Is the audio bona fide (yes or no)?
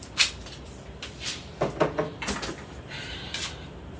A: yes